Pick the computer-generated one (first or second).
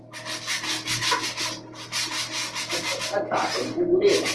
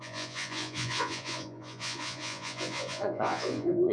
second